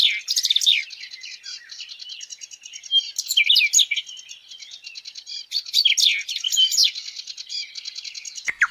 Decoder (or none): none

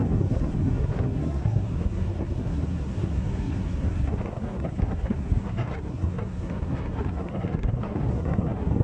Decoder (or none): codec, SNAC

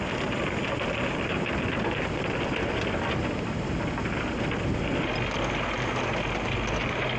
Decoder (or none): none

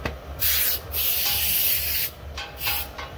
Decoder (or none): none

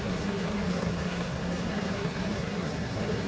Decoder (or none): codec, SNAC